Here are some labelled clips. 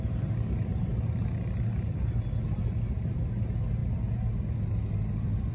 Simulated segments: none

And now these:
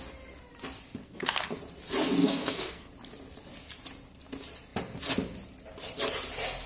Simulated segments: 1.0-1.6; 2.2-2.9

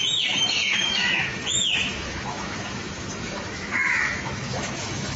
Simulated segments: 0.0-5.2

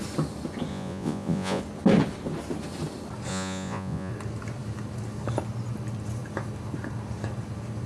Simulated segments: 0.7-1.6; 3.3-4.1

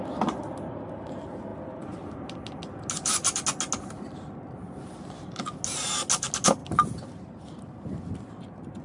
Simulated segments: 6.6-8.3

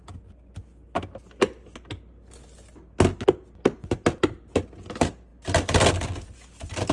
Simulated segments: none

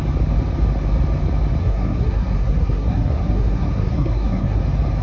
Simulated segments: 1.6-4.6

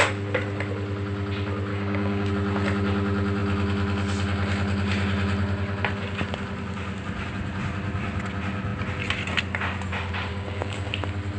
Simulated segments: 1.7-2.3; 10.3-10.9